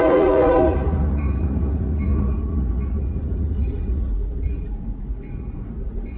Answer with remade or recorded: remade